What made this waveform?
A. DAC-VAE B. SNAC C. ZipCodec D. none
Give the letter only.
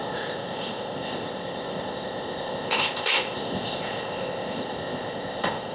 C